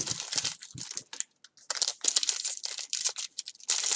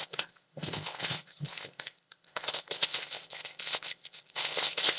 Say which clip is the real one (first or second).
first